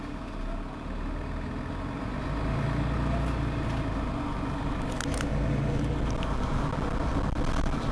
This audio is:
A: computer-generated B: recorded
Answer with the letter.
B